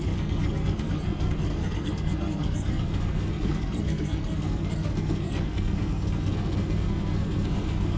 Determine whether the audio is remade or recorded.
remade